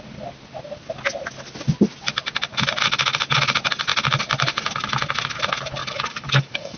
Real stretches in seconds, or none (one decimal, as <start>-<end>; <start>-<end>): 0.0-5.8